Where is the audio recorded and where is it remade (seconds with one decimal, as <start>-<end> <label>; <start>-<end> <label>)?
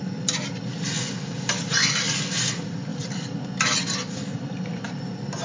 0.0-5.4 recorded